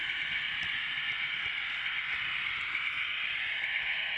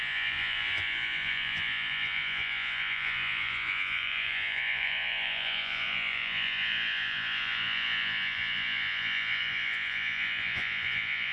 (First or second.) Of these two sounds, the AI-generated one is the second